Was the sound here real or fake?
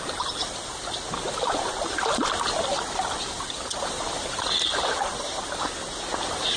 real